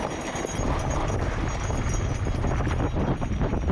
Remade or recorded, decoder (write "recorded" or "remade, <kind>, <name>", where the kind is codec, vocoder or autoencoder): recorded